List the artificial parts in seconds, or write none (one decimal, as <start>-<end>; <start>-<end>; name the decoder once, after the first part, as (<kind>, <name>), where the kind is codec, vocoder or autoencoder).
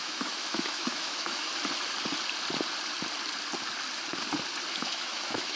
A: 0.0-1.5 (autoencoder, DAC-VAE); 4.7-5.6